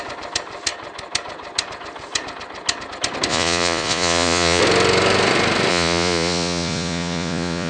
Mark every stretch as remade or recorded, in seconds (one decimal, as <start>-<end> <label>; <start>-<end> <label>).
0.0-3.3 recorded; 3.3-4.6 remade; 4.6-5.7 recorded; 5.7-7.7 remade